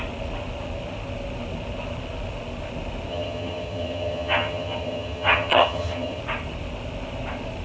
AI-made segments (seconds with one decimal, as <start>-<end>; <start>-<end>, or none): 3.1-6.2